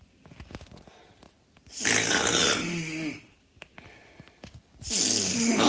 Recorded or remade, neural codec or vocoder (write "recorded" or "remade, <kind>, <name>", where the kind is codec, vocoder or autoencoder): recorded